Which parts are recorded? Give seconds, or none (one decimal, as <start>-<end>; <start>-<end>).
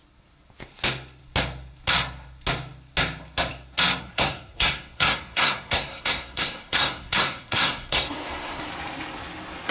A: 0.0-4.0; 8.7-9.7